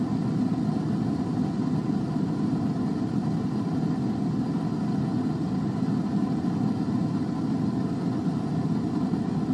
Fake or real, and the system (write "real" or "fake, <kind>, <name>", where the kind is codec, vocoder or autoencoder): real